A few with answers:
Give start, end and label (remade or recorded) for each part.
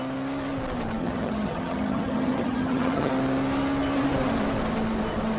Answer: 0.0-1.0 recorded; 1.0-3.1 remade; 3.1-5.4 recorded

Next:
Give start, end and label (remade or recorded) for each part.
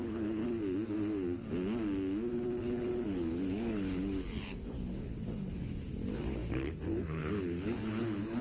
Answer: 0.0-0.4 remade; 0.4-2.6 recorded; 2.6-8.4 remade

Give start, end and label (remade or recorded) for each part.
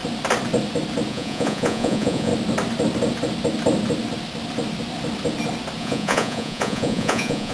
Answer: 0.0-1.1 recorded; 1.1-2.3 remade; 2.3-5.8 recorded; 5.8-7.5 remade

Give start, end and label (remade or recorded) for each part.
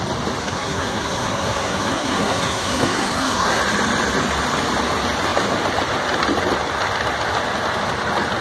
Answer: 0.0-0.4 recorded; 0.4-3.6 remade; 3.6-8.4 recorded